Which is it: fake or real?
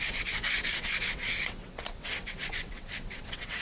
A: fake